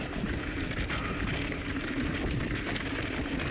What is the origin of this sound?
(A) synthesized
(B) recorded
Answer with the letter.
B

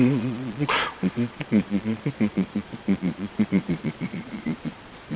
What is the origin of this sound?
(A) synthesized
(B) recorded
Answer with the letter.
A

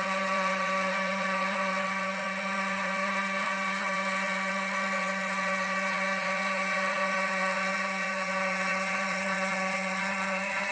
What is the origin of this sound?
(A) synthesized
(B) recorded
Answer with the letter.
A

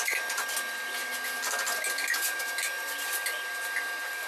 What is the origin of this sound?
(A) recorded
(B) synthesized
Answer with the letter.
A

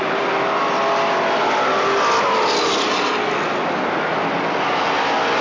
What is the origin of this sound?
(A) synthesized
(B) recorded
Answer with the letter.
B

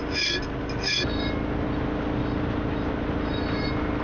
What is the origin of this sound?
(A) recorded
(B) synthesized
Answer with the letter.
A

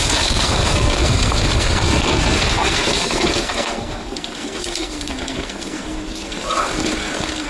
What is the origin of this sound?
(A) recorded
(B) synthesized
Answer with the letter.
B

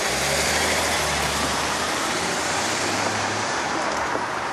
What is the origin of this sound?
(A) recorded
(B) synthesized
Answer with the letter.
B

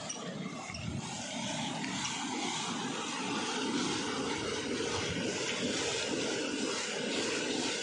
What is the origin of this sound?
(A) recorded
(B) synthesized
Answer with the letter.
A